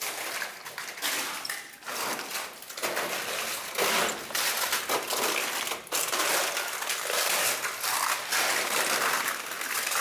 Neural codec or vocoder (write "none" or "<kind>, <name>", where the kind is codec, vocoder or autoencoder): none